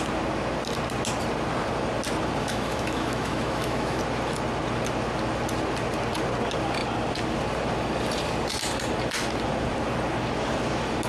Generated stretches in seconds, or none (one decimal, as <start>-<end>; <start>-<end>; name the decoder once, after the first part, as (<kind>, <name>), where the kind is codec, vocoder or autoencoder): 2.4-4.0 (autoencoder, DAC-VAE)